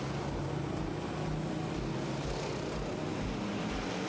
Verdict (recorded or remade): recorded